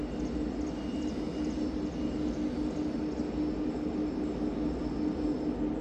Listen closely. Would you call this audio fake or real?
real